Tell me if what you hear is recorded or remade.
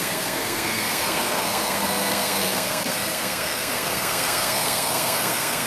remade